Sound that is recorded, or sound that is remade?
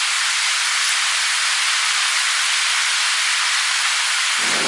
recorded